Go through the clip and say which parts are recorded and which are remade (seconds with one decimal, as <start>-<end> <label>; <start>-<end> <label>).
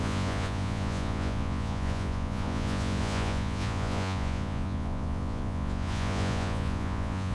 0.0-7.3 remade